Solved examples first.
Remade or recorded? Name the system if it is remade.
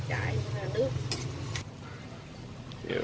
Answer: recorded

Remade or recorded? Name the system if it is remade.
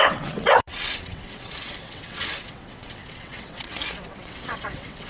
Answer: remade, vocoder, WaveNeXt